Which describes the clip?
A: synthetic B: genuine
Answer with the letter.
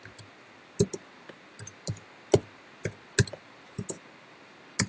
B